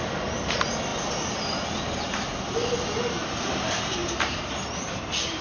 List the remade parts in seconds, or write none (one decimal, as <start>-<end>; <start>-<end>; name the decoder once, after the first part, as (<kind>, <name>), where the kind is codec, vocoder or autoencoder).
none